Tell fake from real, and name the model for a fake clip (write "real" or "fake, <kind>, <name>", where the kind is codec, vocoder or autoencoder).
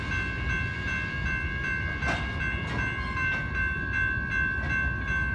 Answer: real